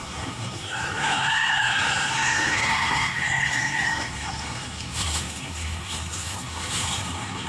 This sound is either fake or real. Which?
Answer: fake